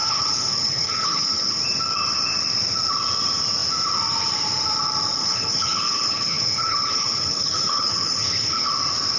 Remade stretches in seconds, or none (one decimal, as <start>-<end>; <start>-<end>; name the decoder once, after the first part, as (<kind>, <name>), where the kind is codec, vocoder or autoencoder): 0.0-1.6 (codec, HILCodec); 5.2-8.7